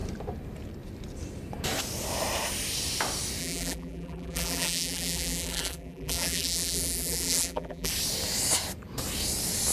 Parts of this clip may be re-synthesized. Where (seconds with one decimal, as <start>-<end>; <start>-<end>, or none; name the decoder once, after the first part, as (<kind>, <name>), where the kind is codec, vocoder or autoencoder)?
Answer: 3.4-7.9 (vocoder, BigVGAN v2)